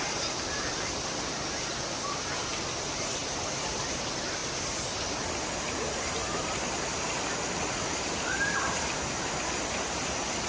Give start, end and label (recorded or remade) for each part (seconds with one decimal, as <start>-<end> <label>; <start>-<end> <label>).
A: 0.0-3.2 recorded; 3.2-4.0 remade; 4.0-6.2 recorded; 6.2-8.4 remade; 8.4-10.5 recorded

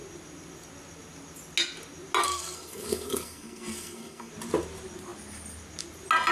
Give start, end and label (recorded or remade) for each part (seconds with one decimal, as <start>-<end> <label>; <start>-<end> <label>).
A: 0.0-2.2 recorded; 2.2-4.3 remade; 4.3-6.3 recorded

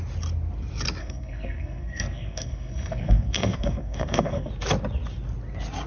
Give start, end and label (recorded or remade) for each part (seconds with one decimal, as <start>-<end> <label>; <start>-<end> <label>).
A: 0.0-1.0 recorded; 1.0-4.5 remade; 4.5-5.9 recorded

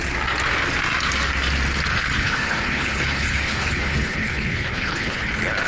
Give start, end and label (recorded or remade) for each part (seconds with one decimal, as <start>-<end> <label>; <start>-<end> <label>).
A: 0.0-1.9 recorded; 1.9-5.3 remade; 5.3-5.7 recorded

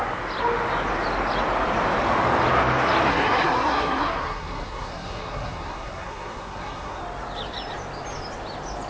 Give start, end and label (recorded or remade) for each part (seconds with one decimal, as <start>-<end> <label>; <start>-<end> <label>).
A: 0.0-3.1 recorded; 3.1-7.0 remade; 7.0-8.9 recorded